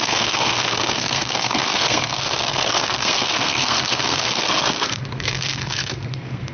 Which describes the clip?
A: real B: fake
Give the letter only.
B